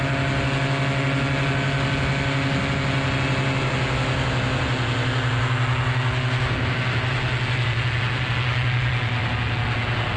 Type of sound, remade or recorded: recorded